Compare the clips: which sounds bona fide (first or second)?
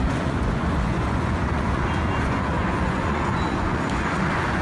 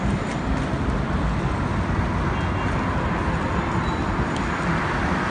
second